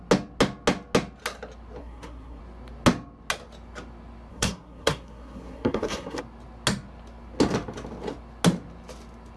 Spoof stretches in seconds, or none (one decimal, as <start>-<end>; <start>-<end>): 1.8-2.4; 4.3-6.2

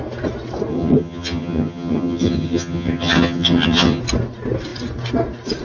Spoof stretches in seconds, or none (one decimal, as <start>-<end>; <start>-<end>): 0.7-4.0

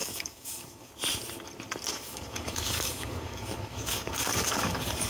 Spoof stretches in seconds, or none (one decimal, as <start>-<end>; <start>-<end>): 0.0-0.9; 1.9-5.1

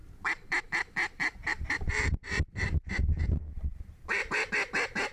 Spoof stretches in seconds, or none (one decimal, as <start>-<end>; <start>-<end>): 1.4-4.5

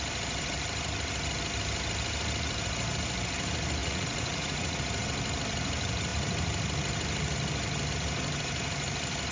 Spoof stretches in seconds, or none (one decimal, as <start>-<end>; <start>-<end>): 3.8-4.8